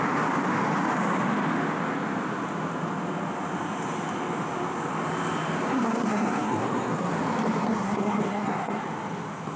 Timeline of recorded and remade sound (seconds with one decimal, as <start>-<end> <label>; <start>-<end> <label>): 0.0-5.7 recorded; 5.7-7.1 remade; 7.1-7.6 recorded; 7.6-8.8 remade; 8.8-9.6 recorded